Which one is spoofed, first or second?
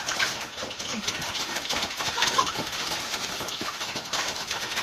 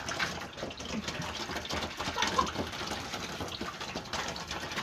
first